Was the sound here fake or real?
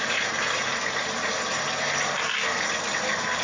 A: real